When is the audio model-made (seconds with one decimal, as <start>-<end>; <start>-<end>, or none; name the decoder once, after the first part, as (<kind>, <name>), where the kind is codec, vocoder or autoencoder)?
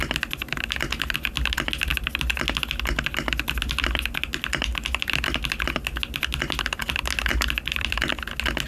7.3-8.1 (vocoder, BigVGAN v2)